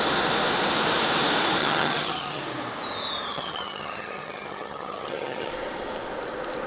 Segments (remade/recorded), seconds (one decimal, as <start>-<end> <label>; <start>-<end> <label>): 0.0-1.6 recorded; 1.6-2.4 remade; 2.4-3.3 recorded; 3.3-5.5 remade; 5.5-6.7 recorded